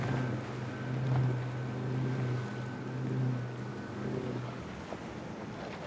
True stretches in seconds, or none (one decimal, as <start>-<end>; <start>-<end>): 0.0-3.7; 4.7-5.9